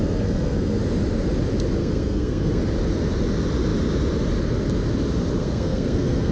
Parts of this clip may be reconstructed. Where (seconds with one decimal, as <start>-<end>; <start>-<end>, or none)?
0.0-0.8; 1.8-2.6; 5.4-6.3